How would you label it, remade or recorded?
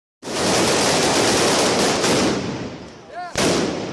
recorded